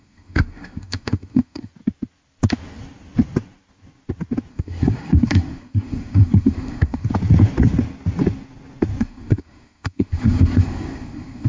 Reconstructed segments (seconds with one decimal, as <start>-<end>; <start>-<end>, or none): 0.0-1.7; 4.5-7.1; 9.0-11.5